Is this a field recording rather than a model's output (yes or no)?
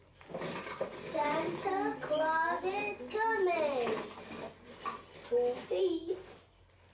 yes